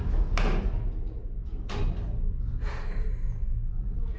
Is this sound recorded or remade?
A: recorded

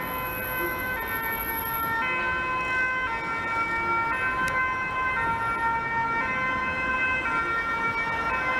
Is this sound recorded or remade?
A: recorded